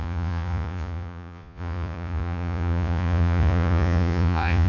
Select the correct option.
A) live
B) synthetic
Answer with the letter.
B